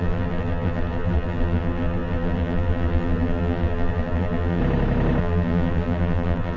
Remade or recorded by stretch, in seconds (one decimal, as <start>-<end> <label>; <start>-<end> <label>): 0.0-4.6 remade; 4.6-5.2 recorded; 5.2-6.6 remade